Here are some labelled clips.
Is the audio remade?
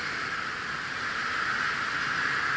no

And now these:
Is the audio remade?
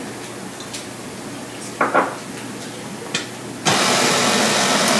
no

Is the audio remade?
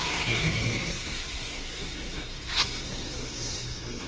yes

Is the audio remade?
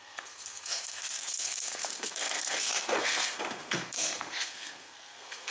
yes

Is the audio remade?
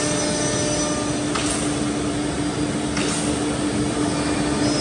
no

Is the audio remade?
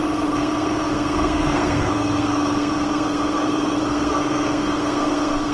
yes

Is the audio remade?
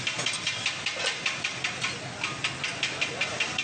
no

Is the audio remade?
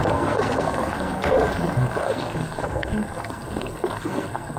yes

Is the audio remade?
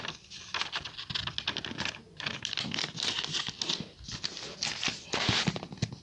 no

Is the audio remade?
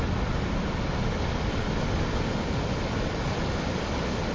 no